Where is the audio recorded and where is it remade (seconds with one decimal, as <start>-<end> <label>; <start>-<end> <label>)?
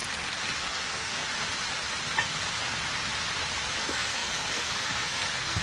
0.0-0.6 recorded; 0.6-1.2 remade; 1.2-3.8 recorded; 3.8-5.6 remade